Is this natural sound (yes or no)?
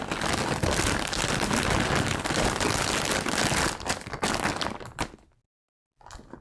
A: yes